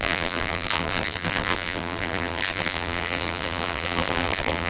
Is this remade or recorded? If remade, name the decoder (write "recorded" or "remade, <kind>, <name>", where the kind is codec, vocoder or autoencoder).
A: remade, vocoder, BigVGAN v2